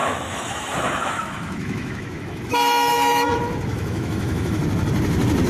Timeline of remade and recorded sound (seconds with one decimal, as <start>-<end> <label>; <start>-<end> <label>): 0.0-3.3 remade; 3.3-3.7 recorded; 3.7-4.6 remade; 4.6-5.5 recorded